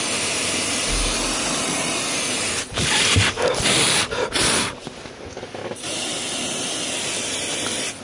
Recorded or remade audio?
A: recorded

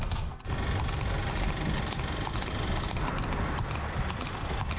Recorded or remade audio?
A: recorded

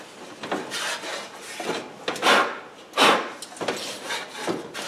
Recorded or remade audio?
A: recorded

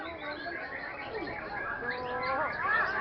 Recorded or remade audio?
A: recorded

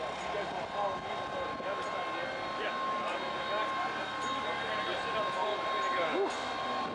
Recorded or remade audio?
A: recorded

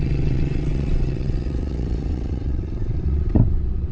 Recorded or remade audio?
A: remade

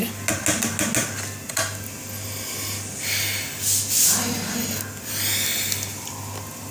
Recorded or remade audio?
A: recorded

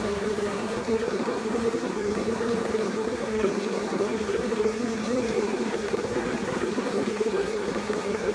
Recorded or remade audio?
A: remade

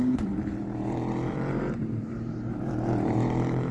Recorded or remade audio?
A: remade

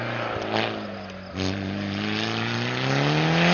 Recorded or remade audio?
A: recorded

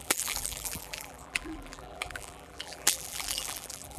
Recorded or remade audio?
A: remade